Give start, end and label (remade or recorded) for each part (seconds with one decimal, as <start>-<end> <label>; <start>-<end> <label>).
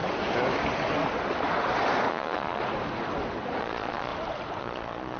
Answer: 0.0-2.1 recorded; 2.1-2.6 remade; 2.6-3.6 recorded; 3.6-4.1 remade; 4.1-4.6 recorded; 4.6-5.2 remade